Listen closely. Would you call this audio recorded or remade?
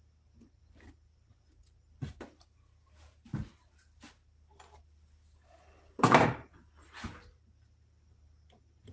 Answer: recorded